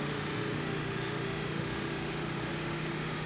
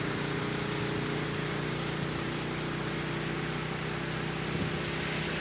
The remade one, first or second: first